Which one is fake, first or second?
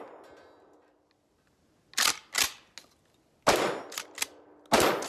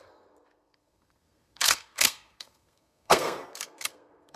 second